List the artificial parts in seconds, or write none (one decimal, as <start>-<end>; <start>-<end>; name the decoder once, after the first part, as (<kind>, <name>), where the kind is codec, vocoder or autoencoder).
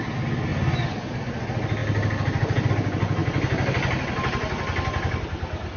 none